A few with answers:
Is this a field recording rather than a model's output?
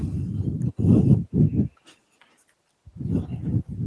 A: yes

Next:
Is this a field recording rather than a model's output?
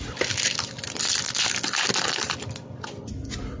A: yes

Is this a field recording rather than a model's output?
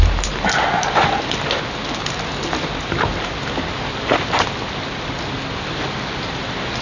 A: yes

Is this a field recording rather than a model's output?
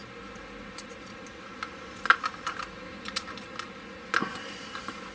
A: yes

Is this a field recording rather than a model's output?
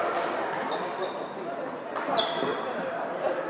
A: yes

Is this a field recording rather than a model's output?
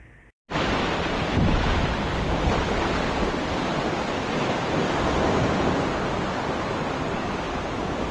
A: yes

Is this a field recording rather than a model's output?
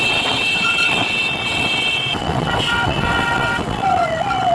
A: no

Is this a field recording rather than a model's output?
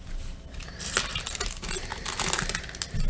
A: yes